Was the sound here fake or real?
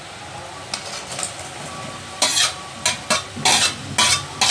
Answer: real